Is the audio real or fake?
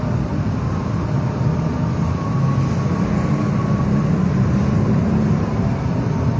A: real